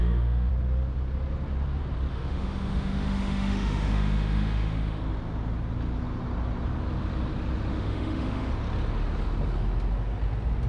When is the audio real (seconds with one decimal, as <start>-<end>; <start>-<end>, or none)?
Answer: 0.5-2.1; 5.0-7.7; 8.5-10.7